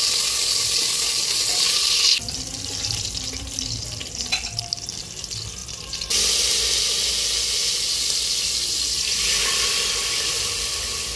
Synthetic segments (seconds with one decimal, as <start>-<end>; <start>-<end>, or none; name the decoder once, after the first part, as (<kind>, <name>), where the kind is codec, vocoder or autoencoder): none